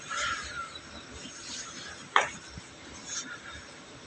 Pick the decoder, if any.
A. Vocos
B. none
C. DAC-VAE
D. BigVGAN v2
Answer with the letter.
D